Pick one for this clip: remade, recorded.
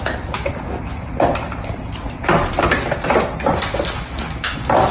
recorded